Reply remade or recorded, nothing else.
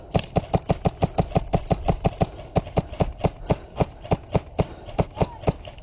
recorded